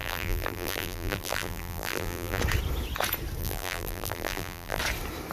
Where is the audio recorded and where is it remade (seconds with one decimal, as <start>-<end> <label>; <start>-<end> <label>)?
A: 0.0-2.4 remade; 2.4-3.4 recorded; 3.4-4.8 remade; 4.8-5.3 recorded